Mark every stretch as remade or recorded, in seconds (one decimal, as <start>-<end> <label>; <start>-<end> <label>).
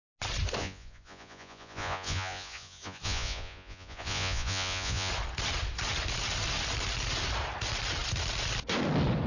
0.0-0.6 recorded; 0.6-5.1 remade; 5.1-9.3 recorded